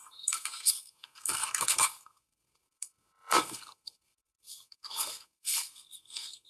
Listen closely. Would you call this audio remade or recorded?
remade